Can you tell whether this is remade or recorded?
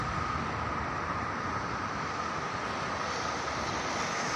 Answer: remade